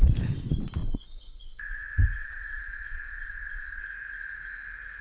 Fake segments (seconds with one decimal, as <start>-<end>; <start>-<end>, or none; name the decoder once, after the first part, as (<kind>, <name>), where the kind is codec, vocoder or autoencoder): 0.8-3.8 (vocoder, Vocos)